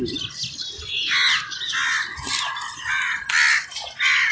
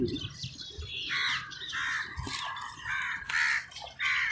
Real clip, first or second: first